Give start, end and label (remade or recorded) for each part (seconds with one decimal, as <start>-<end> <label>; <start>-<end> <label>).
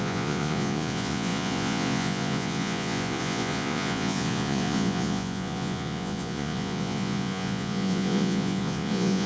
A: 0.0-9.3 remade